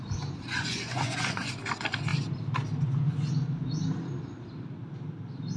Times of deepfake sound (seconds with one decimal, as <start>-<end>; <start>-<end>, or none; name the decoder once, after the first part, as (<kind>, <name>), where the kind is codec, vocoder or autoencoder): 0.5-1.5 (vocoder, Vocos)